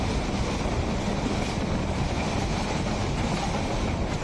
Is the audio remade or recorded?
recorded